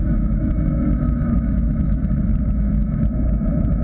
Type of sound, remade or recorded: remade